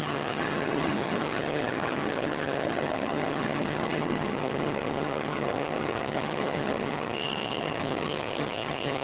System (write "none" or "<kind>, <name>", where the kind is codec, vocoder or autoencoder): vocoder, HiFi-GAN